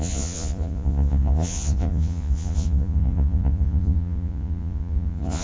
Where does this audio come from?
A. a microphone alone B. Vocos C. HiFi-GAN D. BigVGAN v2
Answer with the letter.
B